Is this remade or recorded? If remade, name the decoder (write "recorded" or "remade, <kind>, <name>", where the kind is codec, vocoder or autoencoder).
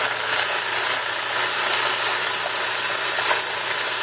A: recorded